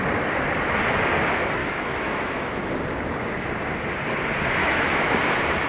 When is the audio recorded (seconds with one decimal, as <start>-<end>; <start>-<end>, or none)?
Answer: 0.0-1.6; 2.7-4.6; 5.2-5.7